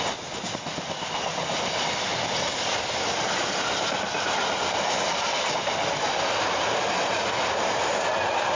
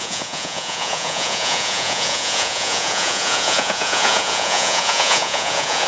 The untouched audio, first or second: first